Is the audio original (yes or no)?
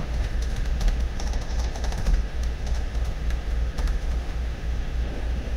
no